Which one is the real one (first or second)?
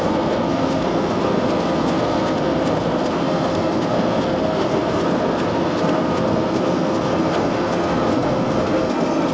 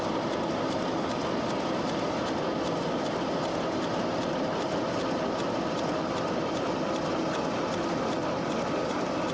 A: second